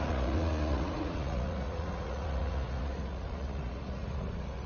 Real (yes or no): no